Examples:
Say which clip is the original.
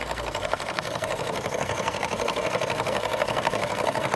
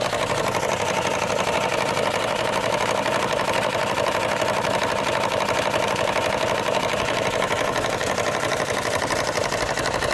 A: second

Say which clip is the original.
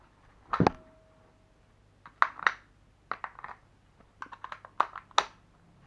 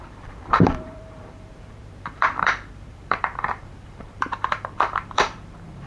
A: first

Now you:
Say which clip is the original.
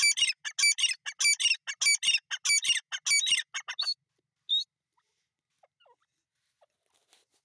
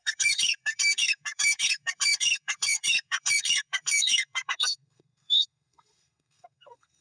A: first